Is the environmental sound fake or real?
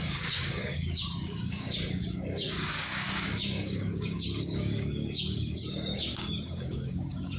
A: fake